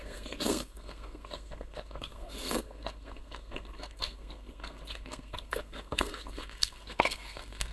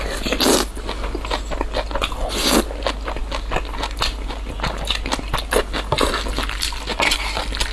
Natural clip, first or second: second